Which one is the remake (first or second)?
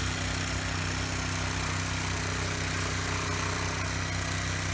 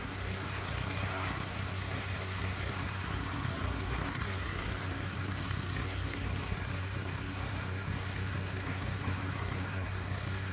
second